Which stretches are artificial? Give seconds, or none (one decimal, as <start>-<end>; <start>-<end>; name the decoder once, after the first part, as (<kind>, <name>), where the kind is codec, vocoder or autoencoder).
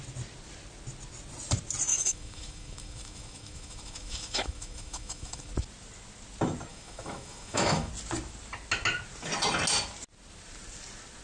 1.9-5.5 (autoencoder, DAC-VAE); 6.7-7.9